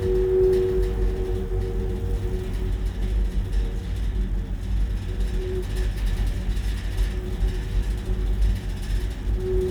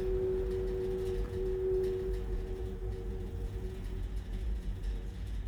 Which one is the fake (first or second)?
second